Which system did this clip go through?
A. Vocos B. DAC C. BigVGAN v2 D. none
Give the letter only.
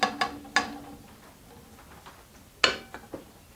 D